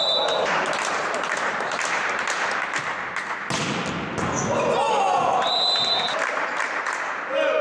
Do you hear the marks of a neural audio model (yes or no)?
no